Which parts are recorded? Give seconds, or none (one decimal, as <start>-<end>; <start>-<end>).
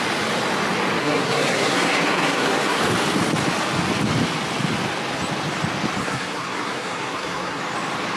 0.0-1.0; 2.8-6.0; 7.6-8.2